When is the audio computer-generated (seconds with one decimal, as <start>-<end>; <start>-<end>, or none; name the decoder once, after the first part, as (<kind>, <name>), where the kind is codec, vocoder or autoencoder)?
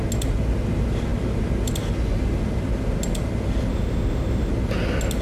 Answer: 3.7-4.5 (autoencoder, DAC-VAE)